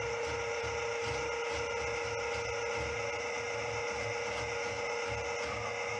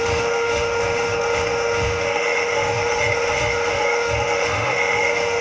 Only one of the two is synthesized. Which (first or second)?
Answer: second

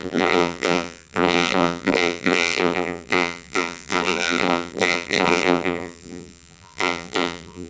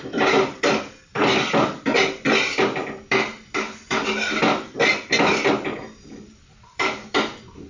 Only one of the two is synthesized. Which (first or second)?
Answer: first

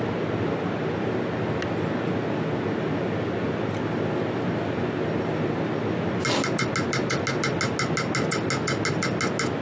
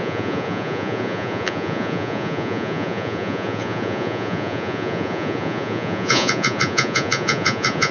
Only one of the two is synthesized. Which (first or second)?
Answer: second